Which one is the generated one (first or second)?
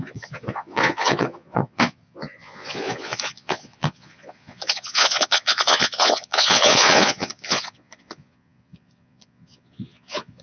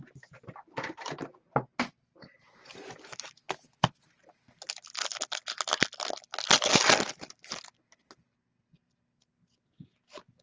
first